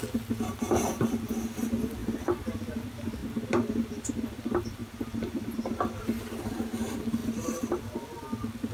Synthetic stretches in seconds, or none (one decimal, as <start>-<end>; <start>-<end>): none

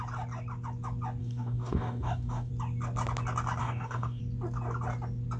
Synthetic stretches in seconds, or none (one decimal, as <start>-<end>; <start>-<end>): 1.2-2.5; 3.6-4.2

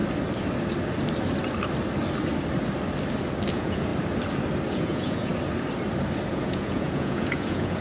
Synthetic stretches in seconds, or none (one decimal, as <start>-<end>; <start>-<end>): 3.5-3.9; 4.7-5.3; 6.3-7.8

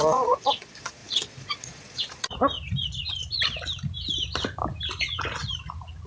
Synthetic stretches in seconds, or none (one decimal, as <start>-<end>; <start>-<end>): 0.0-2.4